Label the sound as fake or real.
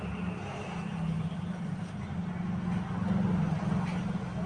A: real